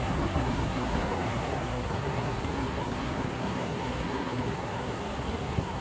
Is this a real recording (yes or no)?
no